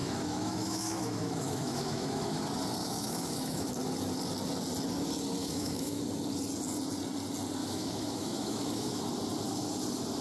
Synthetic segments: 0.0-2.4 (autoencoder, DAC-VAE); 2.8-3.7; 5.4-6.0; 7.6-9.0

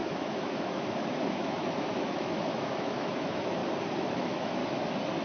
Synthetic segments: 0.0-3.6 (autoencoder, DAC-VAE); 4.1-4.6

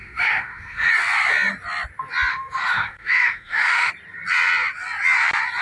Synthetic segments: 0.0-0.9 (autoencoder, DAC-VAE); 2.3-3.9